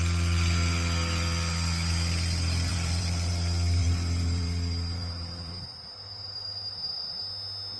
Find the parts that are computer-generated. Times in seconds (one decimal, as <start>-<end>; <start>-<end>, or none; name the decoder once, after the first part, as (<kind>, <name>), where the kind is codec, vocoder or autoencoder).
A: 2.7-3.3 (vocoder, BigVGAN v2); 3.8-7.2